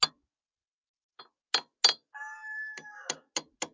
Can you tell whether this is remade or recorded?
recorded